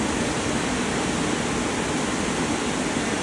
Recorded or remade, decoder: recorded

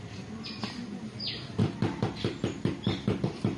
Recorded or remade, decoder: recorded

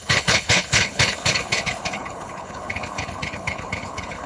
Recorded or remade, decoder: remade, codec, HILCodec